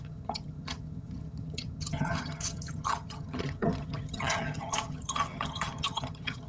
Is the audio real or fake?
fake